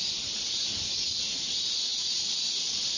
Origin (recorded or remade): recorded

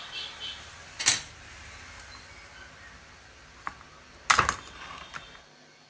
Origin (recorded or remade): recorded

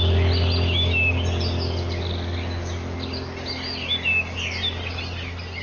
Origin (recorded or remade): recorded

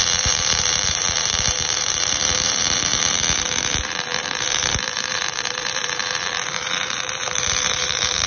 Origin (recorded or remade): remade